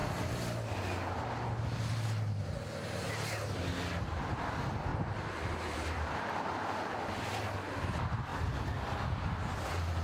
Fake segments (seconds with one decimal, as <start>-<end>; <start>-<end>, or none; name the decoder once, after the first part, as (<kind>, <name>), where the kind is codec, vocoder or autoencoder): 4.9-7.3 (vocoder, BigVGAN v2)